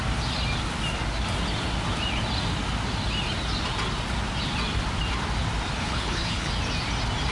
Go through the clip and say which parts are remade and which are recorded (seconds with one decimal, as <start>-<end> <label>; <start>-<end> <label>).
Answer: 0.0-5.8 recorded; 5.8-6.5 remade; 6.5-7.3 recorded